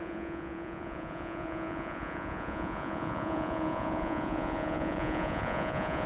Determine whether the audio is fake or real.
fake